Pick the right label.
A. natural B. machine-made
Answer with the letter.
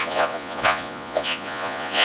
B